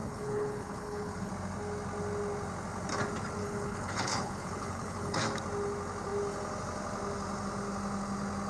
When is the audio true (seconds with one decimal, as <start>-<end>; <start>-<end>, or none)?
1.3-3.4; 5.2-8.5